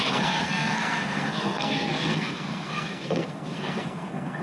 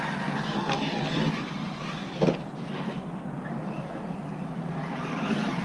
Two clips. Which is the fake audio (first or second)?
first